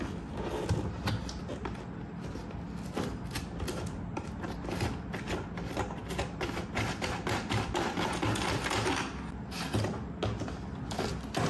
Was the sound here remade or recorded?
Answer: recorded